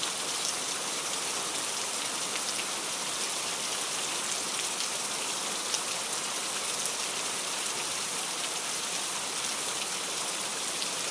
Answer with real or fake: fake